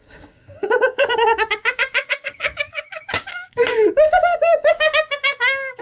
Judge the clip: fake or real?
fake